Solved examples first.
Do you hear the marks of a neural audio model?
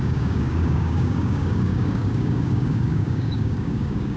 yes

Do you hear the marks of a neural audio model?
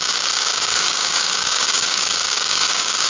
yes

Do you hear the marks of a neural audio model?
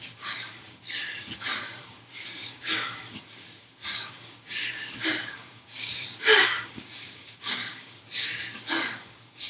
yes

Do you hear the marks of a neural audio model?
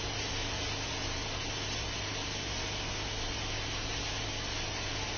no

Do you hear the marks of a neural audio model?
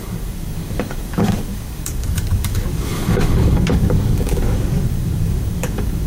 yes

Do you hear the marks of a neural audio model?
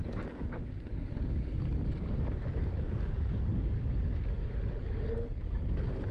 yes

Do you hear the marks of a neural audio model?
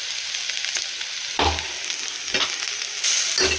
no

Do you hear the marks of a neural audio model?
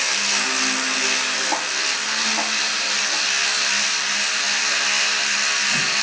no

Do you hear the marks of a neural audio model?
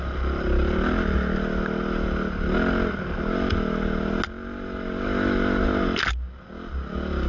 no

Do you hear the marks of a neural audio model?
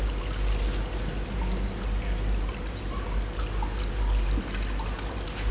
no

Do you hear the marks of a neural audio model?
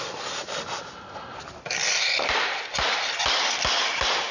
no